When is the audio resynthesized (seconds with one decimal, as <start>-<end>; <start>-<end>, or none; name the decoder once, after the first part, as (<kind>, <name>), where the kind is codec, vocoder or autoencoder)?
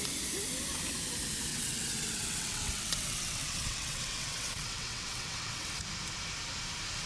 1.5-5.8 (vocoder, WaveNeXt)